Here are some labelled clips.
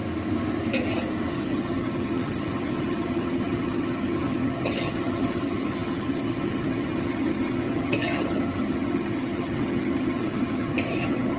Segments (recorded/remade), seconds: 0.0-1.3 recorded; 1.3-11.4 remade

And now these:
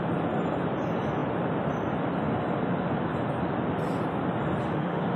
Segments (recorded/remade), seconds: 0.0-4.6 recorded; 4.6-5.2 remade

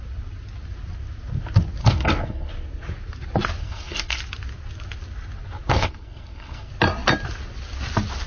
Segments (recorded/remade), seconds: 0.0-1.8 recorded; 1.8-2.5 remade; 2.5-3.6 recorded; 3.6-4.2 remade; 4.2-5.7 recorded; 5.7-6.7 remade; 6.7-8.3 recorded

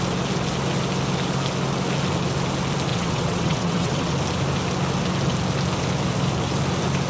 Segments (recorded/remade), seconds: 0.0-2.9 recorded; 2.9-4.1 remade; 4.1-7.1 recorded

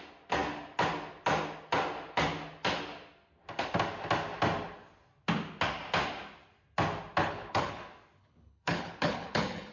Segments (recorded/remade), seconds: 0.0-7.2 recorded; 7.2-7.8 remade; 7.8-8.2 recorded; 8.2-9.7 remade

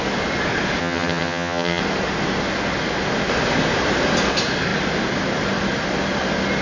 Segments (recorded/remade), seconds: 0.0-0.8 recorded; 0.8-1.8 remade; 1.8-6.6 recorded

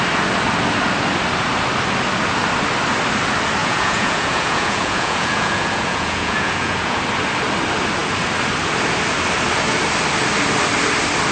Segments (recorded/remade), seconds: 0.0-3.6 recorded; 3.6-7.0 remade; 7.0-11.3 recorded